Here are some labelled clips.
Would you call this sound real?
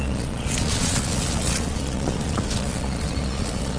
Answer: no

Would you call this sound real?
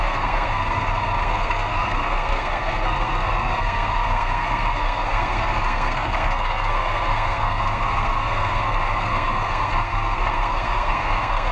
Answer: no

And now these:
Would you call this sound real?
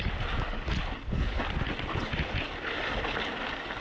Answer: yes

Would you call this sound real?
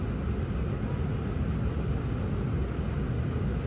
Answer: yes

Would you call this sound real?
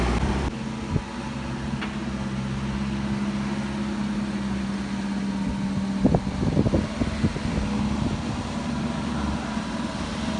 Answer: yes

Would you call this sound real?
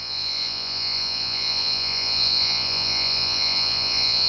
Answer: no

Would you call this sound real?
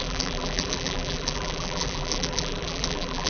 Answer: no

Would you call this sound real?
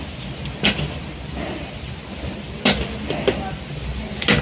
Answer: yes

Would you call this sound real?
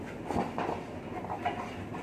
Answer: yes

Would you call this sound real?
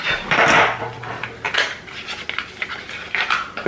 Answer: yes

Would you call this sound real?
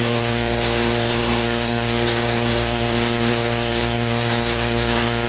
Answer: no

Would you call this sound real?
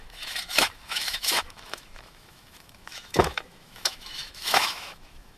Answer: no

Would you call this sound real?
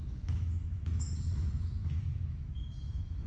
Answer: no